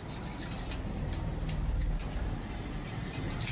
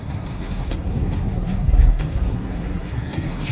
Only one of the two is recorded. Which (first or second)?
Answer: first